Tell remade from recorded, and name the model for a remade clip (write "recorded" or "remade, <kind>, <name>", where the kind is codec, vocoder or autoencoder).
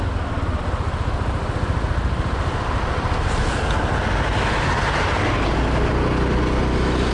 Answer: recorded